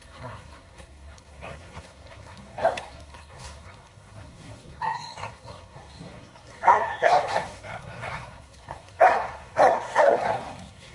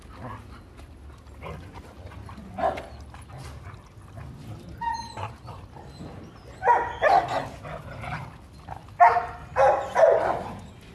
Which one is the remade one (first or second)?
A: first